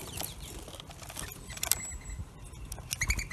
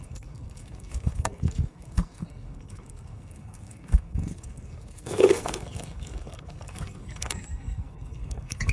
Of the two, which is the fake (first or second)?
second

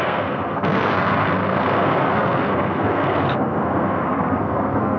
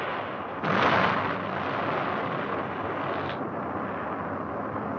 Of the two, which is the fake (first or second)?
first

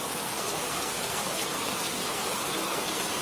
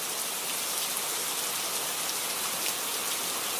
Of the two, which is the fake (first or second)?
first